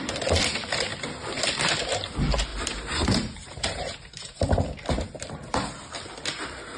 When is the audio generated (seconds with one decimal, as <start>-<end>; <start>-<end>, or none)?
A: 2.5-4.5